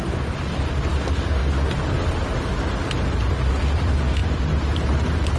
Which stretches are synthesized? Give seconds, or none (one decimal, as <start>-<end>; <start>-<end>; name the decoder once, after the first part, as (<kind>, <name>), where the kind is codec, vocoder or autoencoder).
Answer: 4.2-5.4 (vocoder, BigVGAN v2)